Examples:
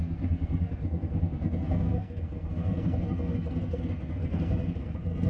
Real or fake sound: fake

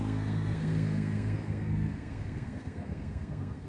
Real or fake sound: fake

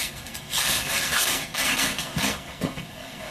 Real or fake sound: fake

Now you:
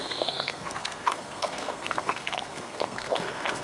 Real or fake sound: fake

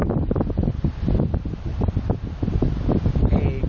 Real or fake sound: real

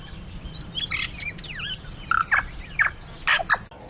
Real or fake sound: real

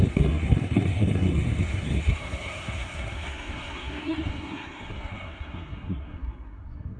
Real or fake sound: fake